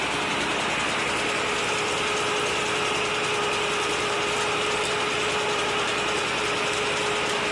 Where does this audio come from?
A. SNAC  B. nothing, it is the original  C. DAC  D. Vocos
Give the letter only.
B